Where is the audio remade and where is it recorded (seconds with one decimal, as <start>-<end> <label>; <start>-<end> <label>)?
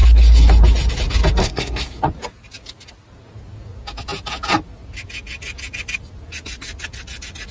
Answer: 0.0-1.4 recorded; 1.4-2.0 remade; 2.0-7.5 recorded